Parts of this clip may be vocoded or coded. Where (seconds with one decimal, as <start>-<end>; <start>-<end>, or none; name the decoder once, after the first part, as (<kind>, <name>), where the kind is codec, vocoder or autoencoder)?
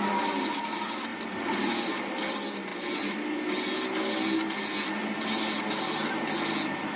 none